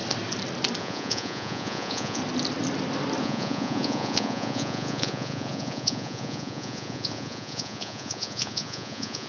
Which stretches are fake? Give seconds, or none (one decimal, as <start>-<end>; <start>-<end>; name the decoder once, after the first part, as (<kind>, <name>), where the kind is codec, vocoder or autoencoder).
0.8-2.2 (vocoder, Vocos); 3.2-9.3